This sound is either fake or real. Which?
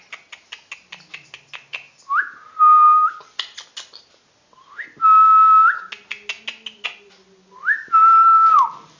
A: real